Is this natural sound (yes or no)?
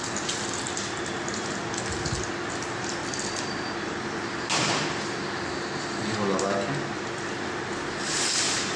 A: yes